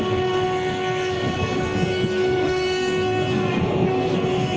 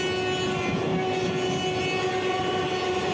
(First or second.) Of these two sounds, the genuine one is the second